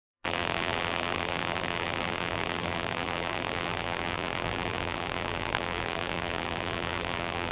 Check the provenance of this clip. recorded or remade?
remade